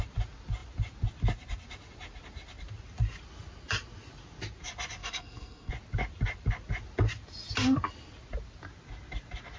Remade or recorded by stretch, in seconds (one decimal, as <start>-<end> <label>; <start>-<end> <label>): 0.0-5.0 recorded; 5.0-5.7 remade; 5.7-9.6 recorded